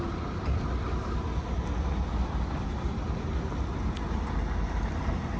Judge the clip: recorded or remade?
recorded